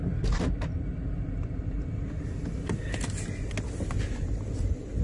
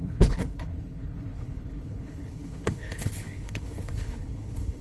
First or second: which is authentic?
first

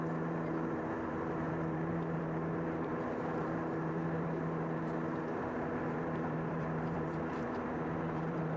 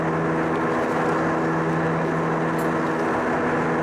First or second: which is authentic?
second